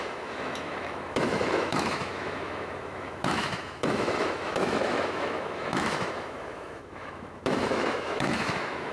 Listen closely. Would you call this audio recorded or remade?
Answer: remade